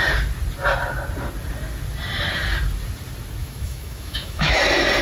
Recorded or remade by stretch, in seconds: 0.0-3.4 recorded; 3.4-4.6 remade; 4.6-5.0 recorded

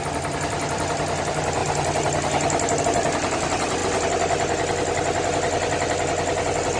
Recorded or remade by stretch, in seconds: 0.0-1.6 remade; 1.6-2.8 recorded; 2.8-3.8 remade; 3.8-6.8 recorded

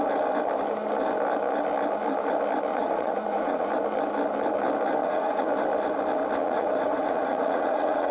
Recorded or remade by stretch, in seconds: 0.0-2.7 recorded; 2.7-3.7 remade; 3.7-5.0 recorded; 5.0-5.5 remade; 5.5-6.4 recorded; 6.4-8.1 remade

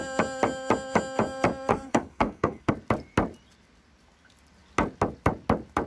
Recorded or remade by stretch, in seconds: 0.0-1.7 recorded; 1.7-2.7 remade; 2.7-5.9 recorded

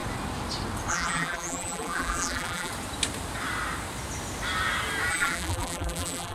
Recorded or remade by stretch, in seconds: 0.0-0.9 recorded; 0.9-2.7 remade; 2.7-5.1 recorded; 5.1-6.3 remade